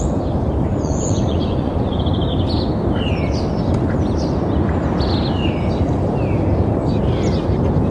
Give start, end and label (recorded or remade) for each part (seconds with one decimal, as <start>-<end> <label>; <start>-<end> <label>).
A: 0.0-0.7 recorded; 0.7-2.0 remade; 2.0-7.9 recorded